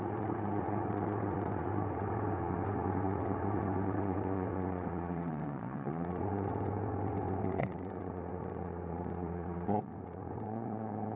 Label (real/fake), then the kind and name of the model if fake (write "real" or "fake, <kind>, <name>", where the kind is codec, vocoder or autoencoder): fake, vocoder, WaveNeXt